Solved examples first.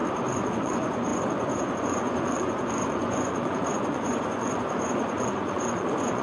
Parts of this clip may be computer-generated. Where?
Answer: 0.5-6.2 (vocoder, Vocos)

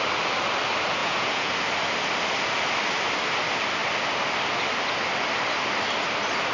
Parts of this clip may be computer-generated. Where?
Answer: 1.0-1.5 (vocoder, Vocos)

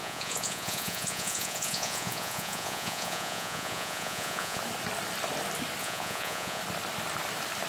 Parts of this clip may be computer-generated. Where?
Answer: 0.0-4.6 (vocoder, Vocos); 5.8-6.6